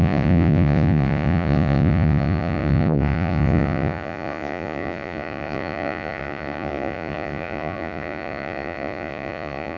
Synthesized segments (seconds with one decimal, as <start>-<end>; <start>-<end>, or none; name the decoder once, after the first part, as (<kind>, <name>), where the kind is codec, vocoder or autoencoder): 0.0-9.8 (vocoder, Vocos)